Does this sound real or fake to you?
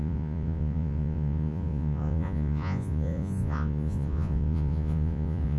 fake